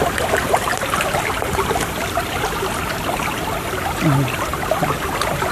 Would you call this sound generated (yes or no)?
no